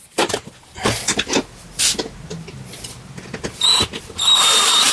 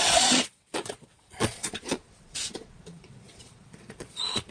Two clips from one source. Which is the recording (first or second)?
first